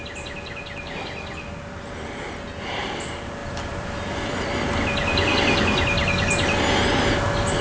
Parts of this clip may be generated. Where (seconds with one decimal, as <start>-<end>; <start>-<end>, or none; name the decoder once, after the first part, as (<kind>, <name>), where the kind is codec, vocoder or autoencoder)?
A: 3.4-4.7 (vocoder, BigVGAN v2)